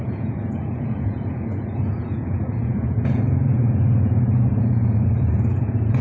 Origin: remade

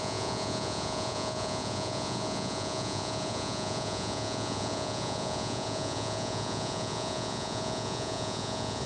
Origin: remade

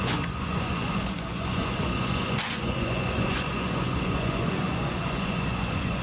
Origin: remade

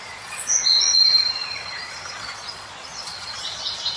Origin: remade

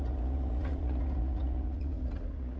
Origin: remade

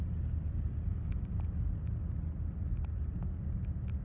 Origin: recorded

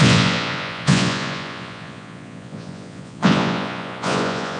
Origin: remade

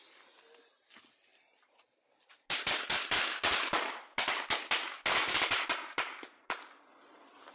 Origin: recorded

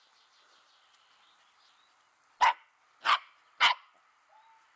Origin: recorded